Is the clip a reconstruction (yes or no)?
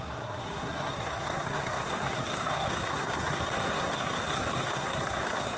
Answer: yes